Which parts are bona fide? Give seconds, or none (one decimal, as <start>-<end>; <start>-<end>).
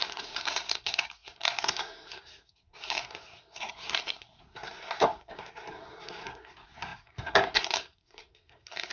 none